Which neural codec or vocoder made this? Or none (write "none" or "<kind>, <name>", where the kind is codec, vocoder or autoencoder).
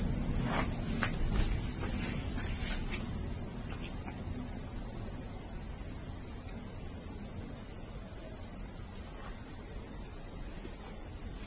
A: none